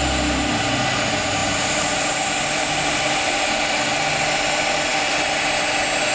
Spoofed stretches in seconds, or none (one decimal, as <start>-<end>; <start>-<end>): none